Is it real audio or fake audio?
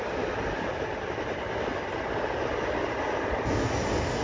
real